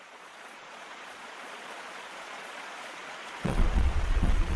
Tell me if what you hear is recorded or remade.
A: remade